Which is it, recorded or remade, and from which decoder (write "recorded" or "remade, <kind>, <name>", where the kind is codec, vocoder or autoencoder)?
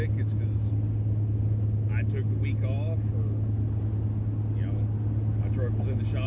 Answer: recorded